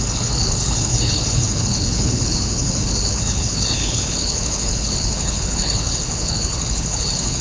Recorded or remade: remade